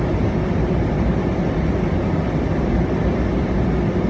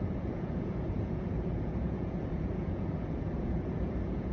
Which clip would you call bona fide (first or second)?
first